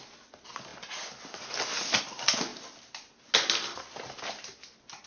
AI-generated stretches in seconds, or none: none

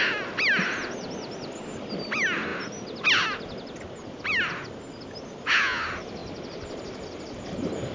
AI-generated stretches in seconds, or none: none

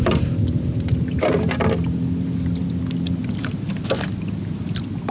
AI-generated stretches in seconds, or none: none